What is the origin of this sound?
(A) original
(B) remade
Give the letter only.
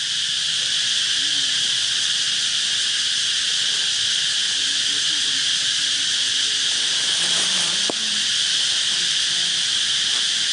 A